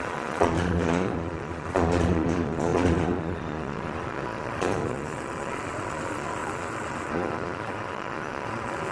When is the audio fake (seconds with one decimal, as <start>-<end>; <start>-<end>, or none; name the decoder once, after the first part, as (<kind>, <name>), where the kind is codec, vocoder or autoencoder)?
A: 0.0-8.9 (vocoder, Vocos)